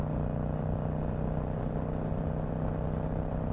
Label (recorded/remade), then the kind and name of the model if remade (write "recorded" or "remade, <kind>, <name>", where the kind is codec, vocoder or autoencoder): recorded